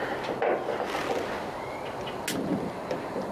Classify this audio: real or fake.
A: real